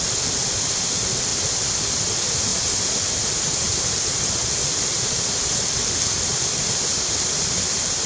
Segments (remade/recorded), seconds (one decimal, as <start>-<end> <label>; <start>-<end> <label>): 0.0-8.1 recorded